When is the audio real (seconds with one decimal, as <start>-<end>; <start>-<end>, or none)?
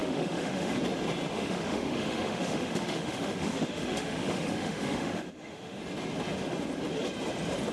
0.7-1.3; 5.8-7.7